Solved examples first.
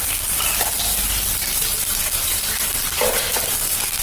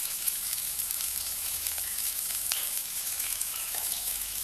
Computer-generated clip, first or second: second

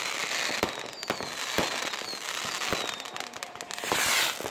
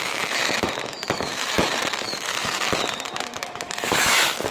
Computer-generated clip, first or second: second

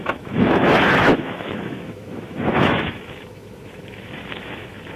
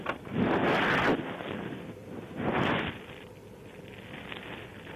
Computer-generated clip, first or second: first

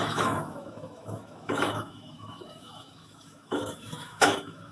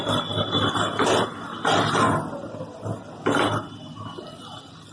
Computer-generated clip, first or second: first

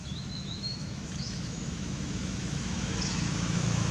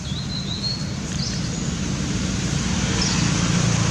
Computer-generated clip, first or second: first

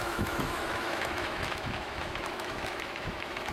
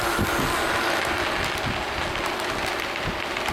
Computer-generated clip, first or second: first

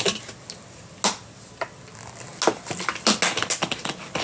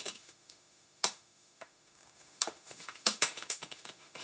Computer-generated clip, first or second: second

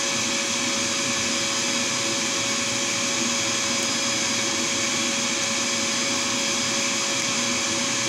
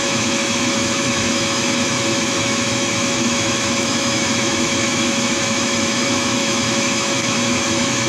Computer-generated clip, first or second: second